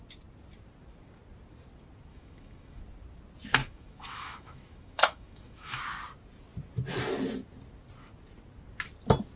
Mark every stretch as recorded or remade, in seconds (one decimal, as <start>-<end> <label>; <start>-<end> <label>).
0.0-2.1 recorded; 2.1-2.8 remade; 2.8-3.6 recorded; 3.6-5.8 remade; 5.8-9.4 recorded